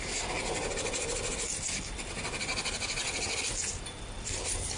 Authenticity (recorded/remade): recorded